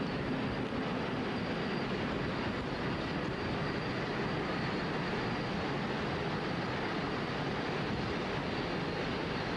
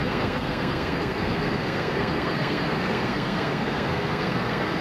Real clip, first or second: first